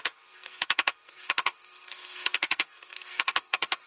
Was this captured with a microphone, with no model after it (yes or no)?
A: no